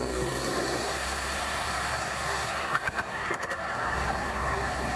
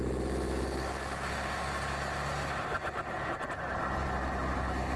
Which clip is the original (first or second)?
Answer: second